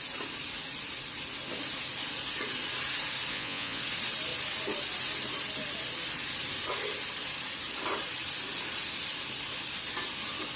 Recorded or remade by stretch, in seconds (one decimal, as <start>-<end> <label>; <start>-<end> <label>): 0.0-3.3 recorded; 3.3-3.8 remade; 3.8-10.6 recorded